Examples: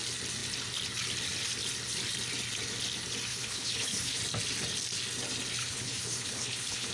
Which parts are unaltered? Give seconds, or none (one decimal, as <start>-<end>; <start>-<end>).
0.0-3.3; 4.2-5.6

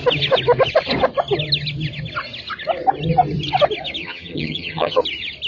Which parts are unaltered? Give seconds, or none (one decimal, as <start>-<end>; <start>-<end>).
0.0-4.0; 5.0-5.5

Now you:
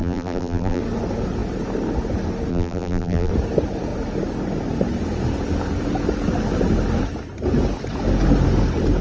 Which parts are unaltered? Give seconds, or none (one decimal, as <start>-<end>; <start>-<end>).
0.8-2.5; 3.3-9.0

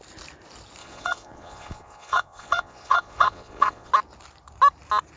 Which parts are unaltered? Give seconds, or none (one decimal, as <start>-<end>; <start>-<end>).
0.0-0.8; 3.9-5.2